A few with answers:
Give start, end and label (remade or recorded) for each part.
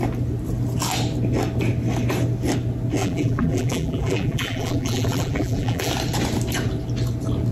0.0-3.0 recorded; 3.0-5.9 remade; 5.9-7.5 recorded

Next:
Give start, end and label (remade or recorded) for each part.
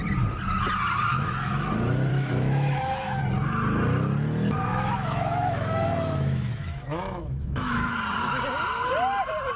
0.0-1.1 recorded; 1.1-1.7 remade; 1.7-2.1 recorded; 2.1-3.2 remade; 3.2-4.7 recorded; 4.7-7.9 remade; 7.9-9.6 recorded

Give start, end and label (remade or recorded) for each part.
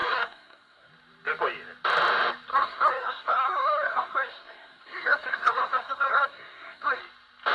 0.0-0.9 remade; 0.9-2.5 recorded; 2.5-7.0 remade; 7.0-7.5 recorded